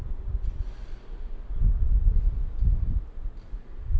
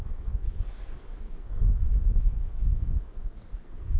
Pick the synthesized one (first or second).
second